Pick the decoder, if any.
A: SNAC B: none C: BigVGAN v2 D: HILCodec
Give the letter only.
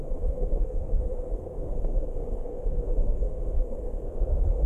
A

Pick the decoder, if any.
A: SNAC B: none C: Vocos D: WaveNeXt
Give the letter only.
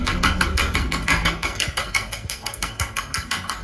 A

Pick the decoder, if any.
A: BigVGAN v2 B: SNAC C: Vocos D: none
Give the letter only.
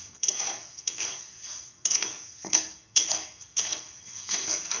B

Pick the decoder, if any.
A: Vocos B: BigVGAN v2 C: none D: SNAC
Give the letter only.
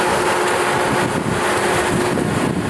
C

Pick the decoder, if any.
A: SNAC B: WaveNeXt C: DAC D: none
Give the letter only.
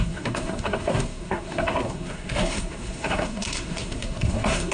A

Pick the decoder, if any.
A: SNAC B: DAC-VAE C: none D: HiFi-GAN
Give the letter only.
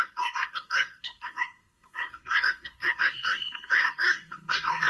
A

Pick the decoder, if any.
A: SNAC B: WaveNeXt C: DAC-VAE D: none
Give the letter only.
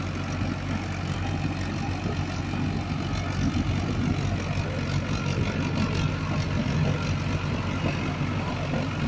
D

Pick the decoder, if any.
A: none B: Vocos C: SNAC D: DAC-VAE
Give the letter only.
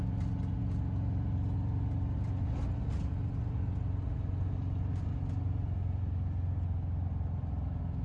A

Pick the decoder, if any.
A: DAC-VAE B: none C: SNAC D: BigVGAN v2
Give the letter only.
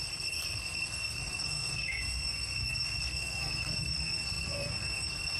C